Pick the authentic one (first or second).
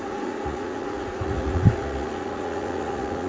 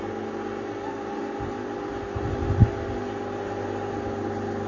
second